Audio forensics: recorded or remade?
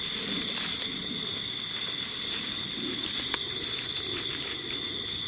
recorded